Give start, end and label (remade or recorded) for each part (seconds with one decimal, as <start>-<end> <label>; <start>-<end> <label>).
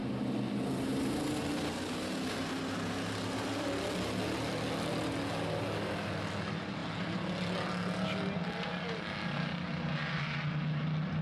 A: 0.0-11.2 recorded